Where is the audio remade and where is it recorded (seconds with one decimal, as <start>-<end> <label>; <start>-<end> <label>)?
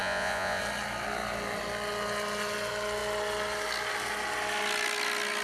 0.0-0.6 remade; 0.6-5.4 recorded